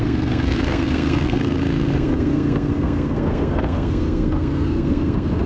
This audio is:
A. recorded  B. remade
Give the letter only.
B